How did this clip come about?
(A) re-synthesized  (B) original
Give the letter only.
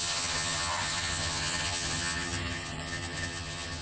A